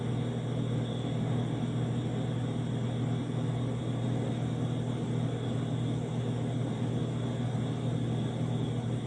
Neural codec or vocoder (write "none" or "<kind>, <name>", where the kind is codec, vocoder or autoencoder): none